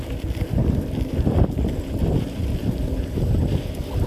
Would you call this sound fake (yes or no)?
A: no